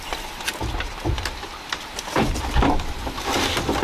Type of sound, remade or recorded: recorded